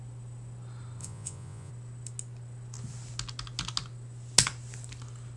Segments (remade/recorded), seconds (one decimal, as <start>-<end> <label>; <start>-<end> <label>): 0.0-1.0 recorded; 1.0-1.7 remade; 1.7-5.4 recorded